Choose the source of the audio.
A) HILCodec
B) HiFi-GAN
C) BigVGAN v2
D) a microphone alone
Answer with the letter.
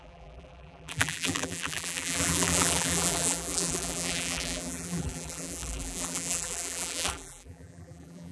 C